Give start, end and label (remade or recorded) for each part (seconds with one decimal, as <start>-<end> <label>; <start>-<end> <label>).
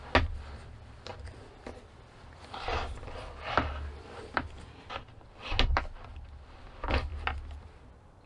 0.0-1.1 recorded; 1.1-5.3 remade; 5.3-8.3 recorded